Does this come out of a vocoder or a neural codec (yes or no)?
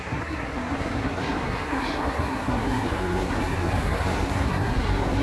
yes